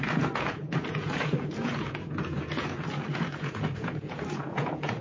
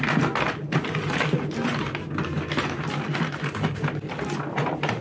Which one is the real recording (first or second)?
second